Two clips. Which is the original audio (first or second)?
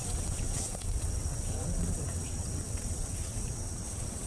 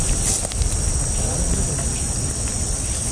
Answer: second